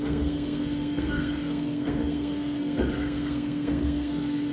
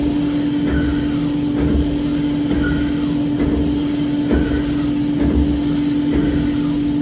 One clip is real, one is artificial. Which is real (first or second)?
second